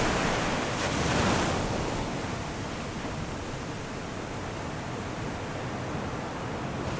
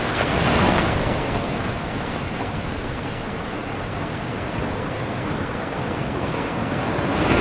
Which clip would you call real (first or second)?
first